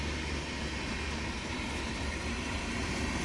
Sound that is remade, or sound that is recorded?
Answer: recorded